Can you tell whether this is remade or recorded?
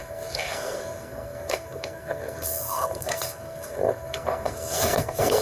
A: remade